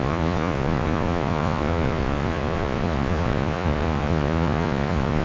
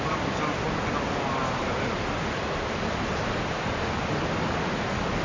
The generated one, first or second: first